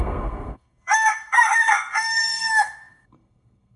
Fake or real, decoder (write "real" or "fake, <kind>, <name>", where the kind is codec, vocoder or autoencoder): fake, codec, SNAC